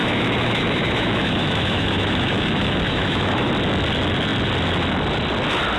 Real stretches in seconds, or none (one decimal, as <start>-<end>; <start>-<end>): 3.5-5.8